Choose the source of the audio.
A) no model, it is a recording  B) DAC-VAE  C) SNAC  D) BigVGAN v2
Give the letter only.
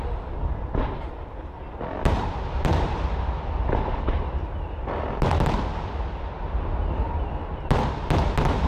A